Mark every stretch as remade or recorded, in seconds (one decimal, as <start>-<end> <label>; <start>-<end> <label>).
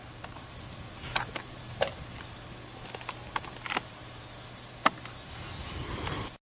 0.0-6.6 recorded